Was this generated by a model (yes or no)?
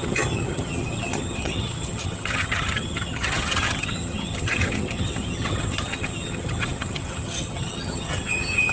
yes